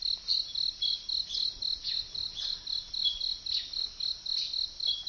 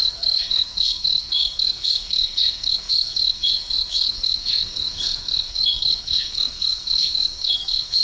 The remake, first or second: second